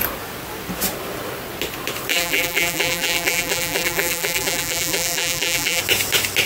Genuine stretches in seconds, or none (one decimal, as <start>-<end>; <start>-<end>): 0.0-2.1; 5.8-6.5